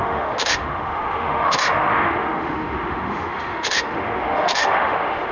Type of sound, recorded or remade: remade